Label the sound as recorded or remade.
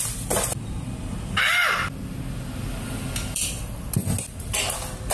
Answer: recorded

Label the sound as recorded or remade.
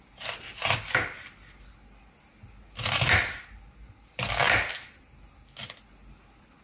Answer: recorded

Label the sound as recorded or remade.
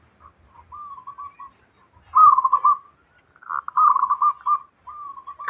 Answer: recorded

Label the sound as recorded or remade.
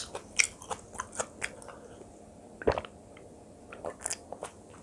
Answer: recorded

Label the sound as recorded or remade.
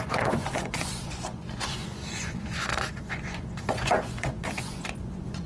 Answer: remade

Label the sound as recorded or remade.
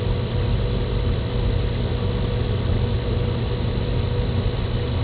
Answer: recorded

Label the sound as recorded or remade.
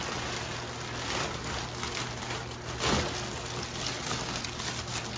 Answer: recorded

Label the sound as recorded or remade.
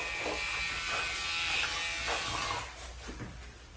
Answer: recorded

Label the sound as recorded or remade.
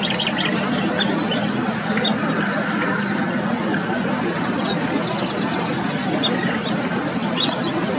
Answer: recorded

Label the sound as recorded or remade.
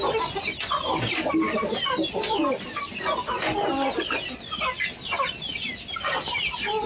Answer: recorded